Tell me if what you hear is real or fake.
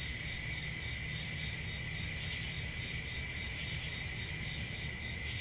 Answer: real